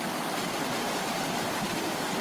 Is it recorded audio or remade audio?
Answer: remade